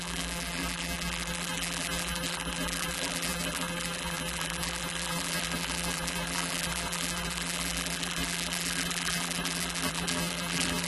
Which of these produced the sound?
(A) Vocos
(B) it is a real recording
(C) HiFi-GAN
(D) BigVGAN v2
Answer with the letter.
D